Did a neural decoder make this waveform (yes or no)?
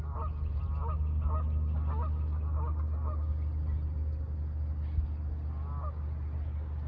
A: no